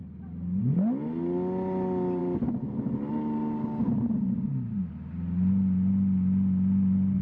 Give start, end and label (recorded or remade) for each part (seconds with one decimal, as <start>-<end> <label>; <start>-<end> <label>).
0.0-7.2 recorded